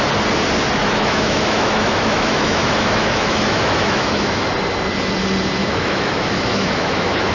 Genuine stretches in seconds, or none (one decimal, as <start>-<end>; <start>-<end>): 0.0-0.8; 4.4-5.6